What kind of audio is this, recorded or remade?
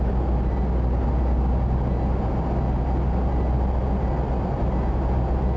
recorded